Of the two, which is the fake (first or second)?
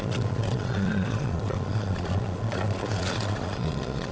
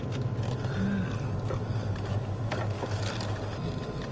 first